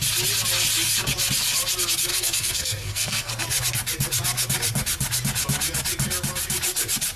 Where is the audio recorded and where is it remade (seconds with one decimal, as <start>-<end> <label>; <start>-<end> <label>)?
0.0-2.1 recorded; 2.1-3.3 remade; 3.3-7.2 recorded